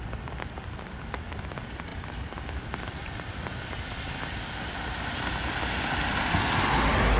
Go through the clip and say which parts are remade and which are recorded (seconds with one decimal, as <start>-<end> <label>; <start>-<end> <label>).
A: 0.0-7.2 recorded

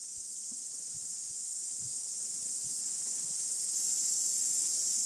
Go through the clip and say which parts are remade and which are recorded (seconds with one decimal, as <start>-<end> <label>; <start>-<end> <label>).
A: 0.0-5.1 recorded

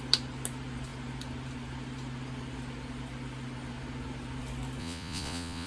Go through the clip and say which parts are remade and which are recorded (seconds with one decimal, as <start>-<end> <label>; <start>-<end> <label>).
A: 0.0-4.8 recorded; 4.8-5.7 remade

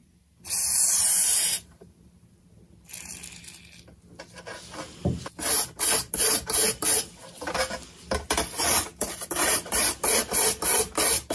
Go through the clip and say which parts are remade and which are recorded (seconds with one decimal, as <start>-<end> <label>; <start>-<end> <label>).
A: 0.0-2.4 remade; 2.4-11.3 recorded